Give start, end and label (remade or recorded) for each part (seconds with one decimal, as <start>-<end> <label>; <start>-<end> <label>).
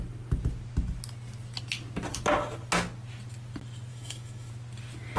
0.0-3.9 recorded; 3.9-4.5 remade; 4.5-5.2 recorded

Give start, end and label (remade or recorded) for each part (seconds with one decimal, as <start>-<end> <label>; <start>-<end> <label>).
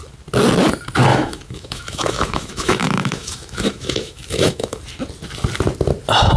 0.0-1.1 recorded; 1.1-4.8 remade; 4.8-6.4 recorded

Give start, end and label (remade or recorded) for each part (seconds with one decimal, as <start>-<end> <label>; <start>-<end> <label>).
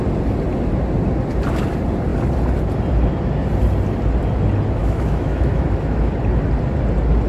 0.0-4.8 recorded; 4.8-6.1 remade; 6.1-7.3 recorded